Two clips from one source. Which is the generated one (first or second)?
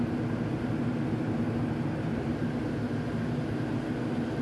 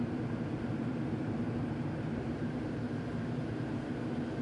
second